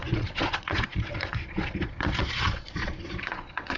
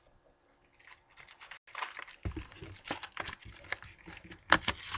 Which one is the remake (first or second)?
first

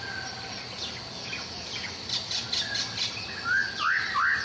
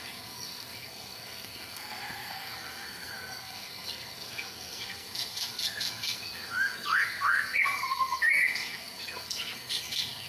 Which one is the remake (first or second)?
second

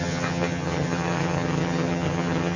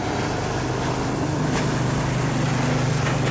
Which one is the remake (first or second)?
first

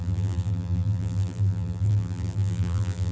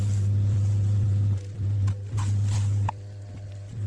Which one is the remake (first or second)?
first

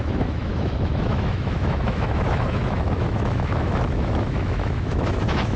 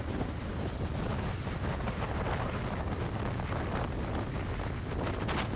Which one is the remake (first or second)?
first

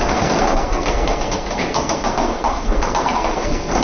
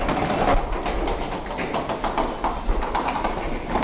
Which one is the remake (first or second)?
first